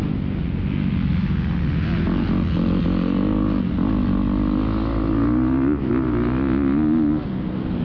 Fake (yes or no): no